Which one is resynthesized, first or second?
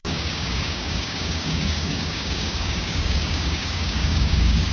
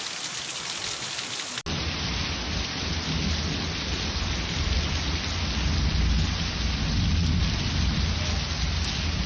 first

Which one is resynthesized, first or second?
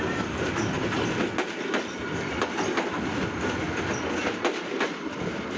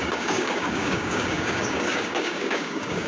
second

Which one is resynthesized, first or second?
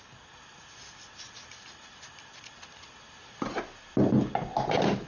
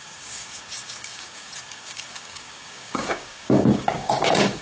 second